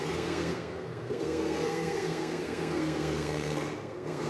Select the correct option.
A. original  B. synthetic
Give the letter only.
B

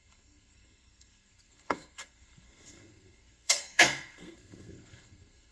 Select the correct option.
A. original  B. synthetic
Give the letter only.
B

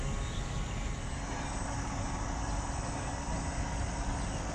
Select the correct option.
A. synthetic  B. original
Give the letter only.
B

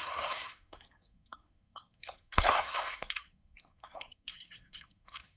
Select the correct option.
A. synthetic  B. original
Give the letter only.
A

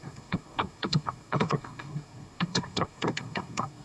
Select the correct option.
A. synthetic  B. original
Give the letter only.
A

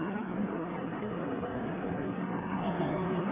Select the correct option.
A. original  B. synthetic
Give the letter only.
B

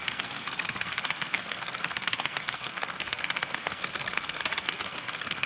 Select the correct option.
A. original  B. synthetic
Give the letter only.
B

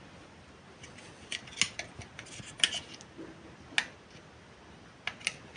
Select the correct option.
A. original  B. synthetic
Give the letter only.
A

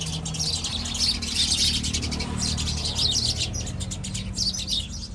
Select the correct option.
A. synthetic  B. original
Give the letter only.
B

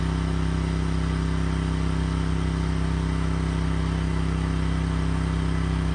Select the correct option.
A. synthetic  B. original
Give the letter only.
B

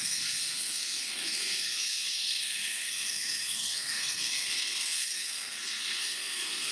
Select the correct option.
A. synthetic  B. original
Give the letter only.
A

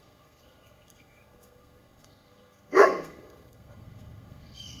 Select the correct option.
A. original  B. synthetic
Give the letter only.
B